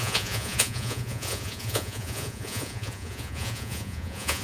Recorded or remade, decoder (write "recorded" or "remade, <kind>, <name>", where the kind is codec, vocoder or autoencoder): remade, vocoder, Vocos